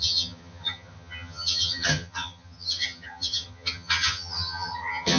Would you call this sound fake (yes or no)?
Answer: yes